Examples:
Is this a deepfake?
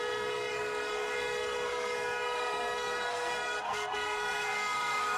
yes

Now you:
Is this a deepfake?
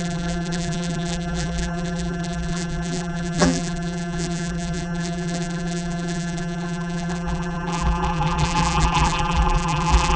yes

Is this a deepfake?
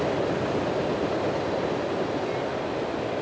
no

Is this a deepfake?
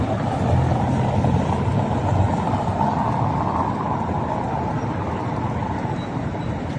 no